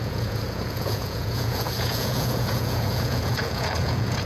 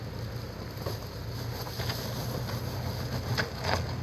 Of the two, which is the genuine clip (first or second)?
second